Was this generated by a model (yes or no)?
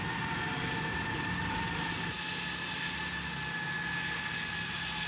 no